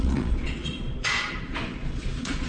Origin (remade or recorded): remade